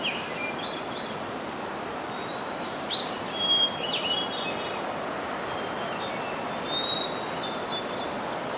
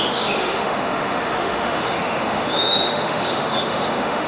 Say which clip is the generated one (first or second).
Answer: second